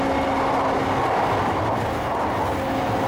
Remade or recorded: recorded